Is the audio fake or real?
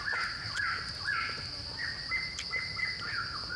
real